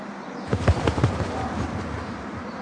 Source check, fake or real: fake